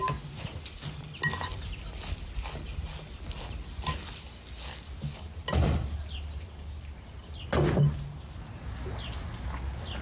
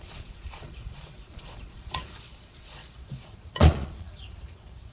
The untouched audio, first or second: first